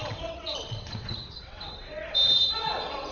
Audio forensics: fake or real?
fake